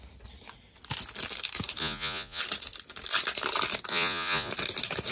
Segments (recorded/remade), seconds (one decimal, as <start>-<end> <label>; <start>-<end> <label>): 0.0-1.8 recorded; 1.8-2.4 remade; 2.4-3.9 recorded; 3.9-4.5 remade; 4.5-5.1 recorded